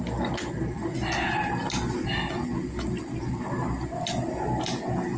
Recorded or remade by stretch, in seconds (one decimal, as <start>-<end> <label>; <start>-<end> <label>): 0.0-5.2 recorded